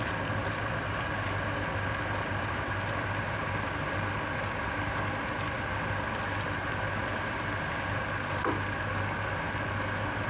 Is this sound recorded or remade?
recorded